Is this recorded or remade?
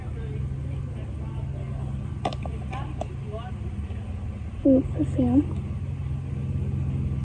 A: recorded